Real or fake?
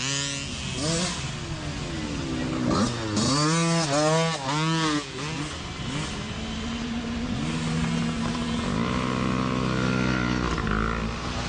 real